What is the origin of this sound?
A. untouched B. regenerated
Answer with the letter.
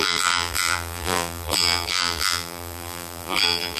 B